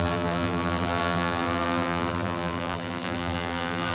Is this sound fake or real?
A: fake